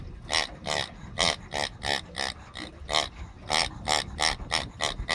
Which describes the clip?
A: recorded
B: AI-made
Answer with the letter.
A